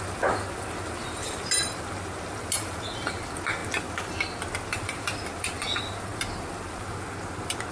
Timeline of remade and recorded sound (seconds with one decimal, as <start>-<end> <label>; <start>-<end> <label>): 0.0-7.7 recorded